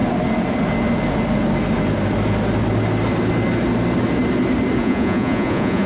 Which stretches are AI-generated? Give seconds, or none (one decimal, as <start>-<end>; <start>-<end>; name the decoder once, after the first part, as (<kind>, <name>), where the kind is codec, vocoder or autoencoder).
4.8-5.9 (vocoder, Vocos)